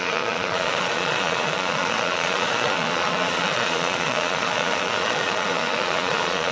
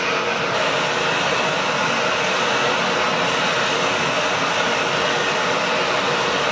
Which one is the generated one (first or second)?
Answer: first